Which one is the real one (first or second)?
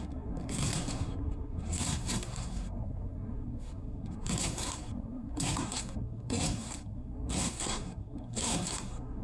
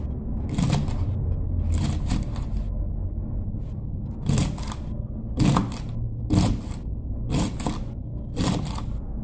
second